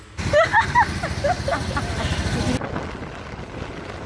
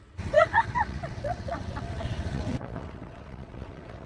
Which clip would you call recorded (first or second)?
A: first